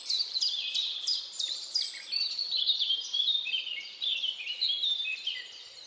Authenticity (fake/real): fake